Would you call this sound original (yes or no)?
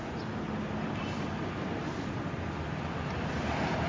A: yes